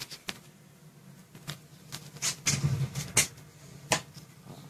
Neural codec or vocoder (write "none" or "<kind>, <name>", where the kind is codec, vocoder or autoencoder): none